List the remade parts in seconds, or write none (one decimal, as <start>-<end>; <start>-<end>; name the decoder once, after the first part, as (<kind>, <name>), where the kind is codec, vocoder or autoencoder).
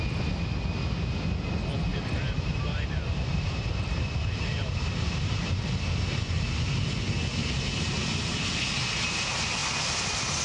1.9-5.6 (vocoder, BigVGAN v2); 7.4-8.2